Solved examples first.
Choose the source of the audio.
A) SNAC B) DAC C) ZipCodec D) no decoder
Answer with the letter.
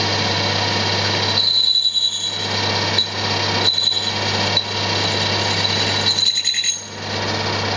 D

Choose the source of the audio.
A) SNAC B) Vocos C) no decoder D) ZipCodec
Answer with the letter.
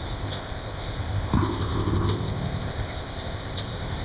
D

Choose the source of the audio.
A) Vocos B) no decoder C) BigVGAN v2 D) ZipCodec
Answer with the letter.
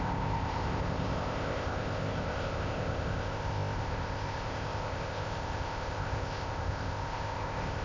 D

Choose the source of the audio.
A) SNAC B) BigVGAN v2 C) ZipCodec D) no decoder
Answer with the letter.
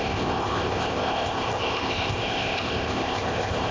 C